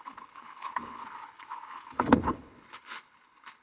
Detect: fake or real fake